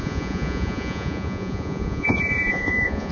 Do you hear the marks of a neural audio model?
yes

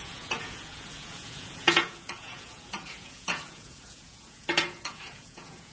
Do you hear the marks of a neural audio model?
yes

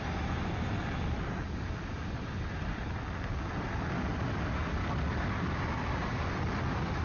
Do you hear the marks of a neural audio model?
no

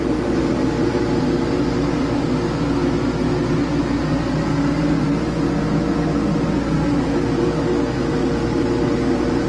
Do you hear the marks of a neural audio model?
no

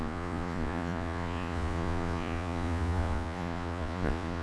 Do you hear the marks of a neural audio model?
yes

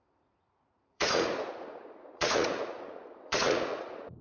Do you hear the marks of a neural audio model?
yes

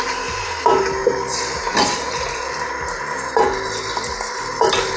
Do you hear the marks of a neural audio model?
no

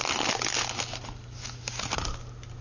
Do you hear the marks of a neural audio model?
no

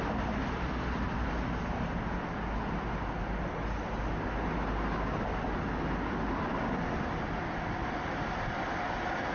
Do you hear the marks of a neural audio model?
no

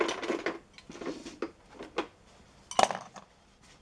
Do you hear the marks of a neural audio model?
no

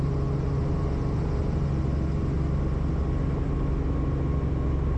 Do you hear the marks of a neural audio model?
no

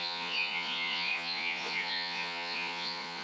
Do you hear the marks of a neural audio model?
yes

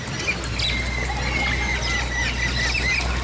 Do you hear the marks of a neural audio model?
no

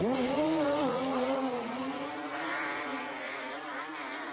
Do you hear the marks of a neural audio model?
yes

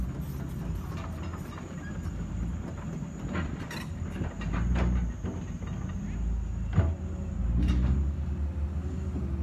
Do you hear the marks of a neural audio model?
no